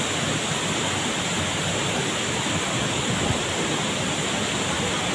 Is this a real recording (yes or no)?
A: yes